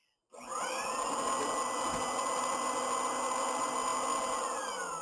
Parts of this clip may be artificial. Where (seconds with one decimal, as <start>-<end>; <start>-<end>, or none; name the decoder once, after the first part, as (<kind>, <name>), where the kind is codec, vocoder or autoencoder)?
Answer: none